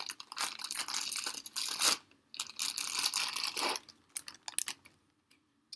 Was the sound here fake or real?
real